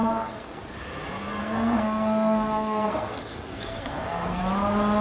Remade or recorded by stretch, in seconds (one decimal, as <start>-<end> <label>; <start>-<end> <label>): 0.0-0.6 remade; 0.6-1.4 recorded; 1.4-4.4 remade; 4.4-5.0 recorded